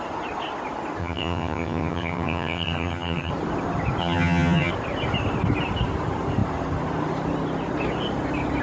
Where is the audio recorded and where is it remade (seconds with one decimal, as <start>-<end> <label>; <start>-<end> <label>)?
0.0-1.0 recorded; 1.0-3.3 remade; 3.3-4.0 recorded; 4.0-4.7 remade; 4.7-8.6 recorded

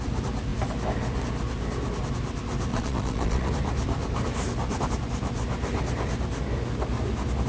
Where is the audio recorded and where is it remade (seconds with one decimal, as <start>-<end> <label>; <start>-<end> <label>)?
0.0-2.7 recorded; 2.7-3.5 remade; 3.5-7.5 recorded

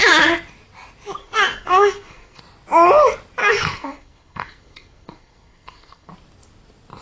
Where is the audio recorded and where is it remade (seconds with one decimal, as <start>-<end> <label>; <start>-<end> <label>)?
0.0-1.2 recorded; 1.2-2.4 remade; 2.4-3.4 recorded; 3.4-6.1 remade; 6.1-7.0 recorded

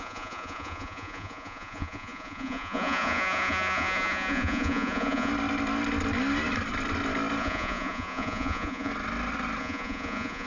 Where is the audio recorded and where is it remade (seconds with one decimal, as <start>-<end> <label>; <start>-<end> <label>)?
0.0-5.3 remade; 5.3-7.4 recorded; 7.4-8.9 remade; 8.9-9.6 recorded; 9.6-10.5 remade

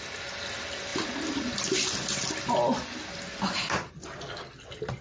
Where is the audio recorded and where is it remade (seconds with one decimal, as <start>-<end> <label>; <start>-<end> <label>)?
0.0-5.0 recorded